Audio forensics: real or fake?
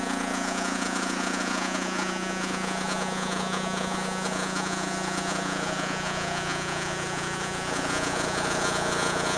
fake